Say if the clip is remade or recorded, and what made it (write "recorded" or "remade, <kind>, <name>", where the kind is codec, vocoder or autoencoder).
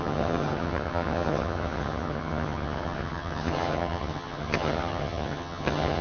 remade, vocoder, HiFi-GAN